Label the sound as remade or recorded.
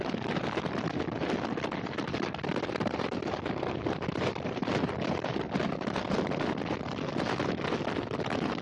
recorded